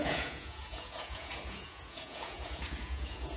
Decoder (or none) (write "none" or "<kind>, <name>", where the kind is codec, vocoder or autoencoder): vocoder, Vocos